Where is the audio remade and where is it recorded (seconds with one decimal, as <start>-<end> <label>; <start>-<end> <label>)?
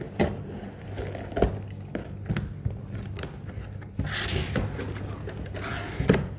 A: 0.0-6.4 recorded